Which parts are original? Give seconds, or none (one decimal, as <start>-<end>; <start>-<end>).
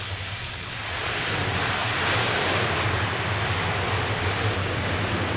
0.0-0.4; 1.1-5.4